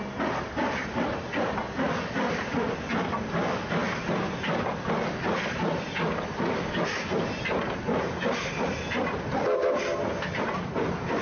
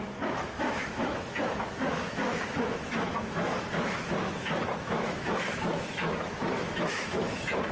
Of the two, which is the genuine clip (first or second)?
first